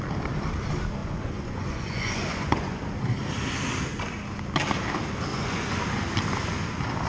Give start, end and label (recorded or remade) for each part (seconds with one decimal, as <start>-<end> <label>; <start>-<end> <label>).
0.0-1.0 recorded; 1.0-2.8 remade; 2.8-5.3 recorded; 5.3-5.8 remade; 5.8-7.1 recorded